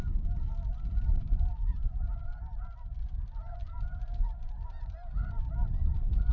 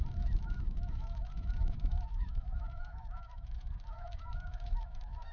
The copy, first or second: second